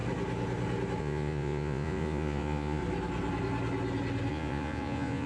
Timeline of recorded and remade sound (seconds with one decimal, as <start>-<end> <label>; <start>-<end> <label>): 0.0-1.0 recorded; 1.0-2.8 remade; 2.8-4.3 recorded; 4.3-5.3 remade